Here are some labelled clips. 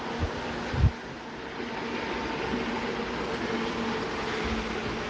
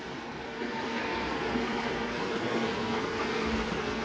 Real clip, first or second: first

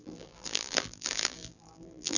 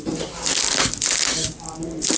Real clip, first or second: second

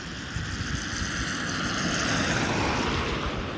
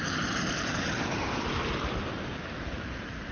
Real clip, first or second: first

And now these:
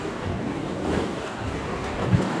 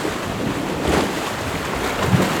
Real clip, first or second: second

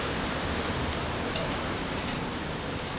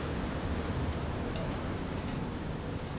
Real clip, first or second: second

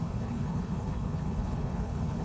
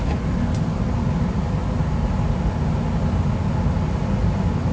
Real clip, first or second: second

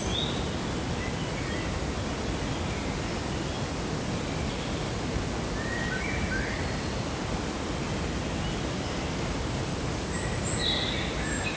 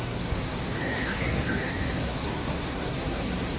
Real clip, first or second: first